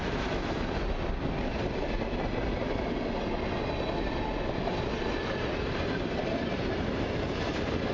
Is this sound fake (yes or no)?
no